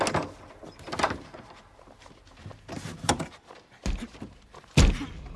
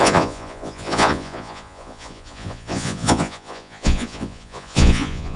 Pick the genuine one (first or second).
first